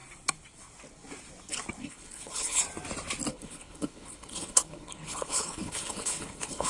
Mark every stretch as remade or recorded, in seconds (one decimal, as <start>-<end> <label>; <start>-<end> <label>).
0.0-1.8 recorded; 1.8-2.6 remade; 2.6-3.3 recorded; 3.3-6.7 remade

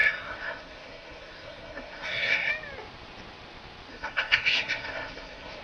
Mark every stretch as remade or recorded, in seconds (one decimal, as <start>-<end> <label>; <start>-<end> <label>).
0.0-2.5 remade; 2.5-3.9 recorded; 3.9-5.6 remade

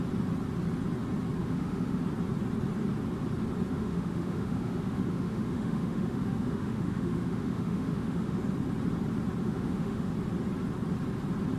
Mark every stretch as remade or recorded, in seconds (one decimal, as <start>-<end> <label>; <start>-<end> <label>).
0.0-1.4 recorded; 1.4-2.0 remade; 2.0-3.7 recorded; 3.7-8.4 remade; 8.4-9.4 recorded; 9.4-10.1 remade; 10.1-11.6 recorded

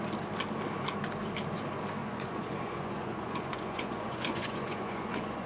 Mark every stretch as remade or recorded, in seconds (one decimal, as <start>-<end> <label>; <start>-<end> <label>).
0.0-2.0 recorded; 2.0-5.5 remade

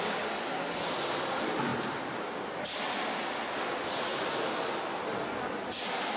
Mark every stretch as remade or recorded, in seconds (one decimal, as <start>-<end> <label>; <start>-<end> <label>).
0.0-4.1 recorded; 4.1-4.8 remade; 4.8-6.2 recorded

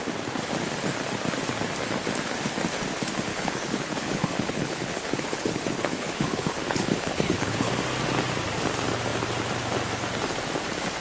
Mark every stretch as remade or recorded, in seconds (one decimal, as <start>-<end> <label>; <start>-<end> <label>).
0.0-3.3 recorded; 3.3-7.7 remade; 7.7-11.0 recorded